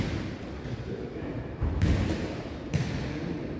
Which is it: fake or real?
fake